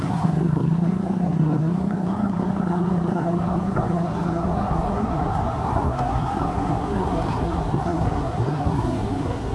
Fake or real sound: fake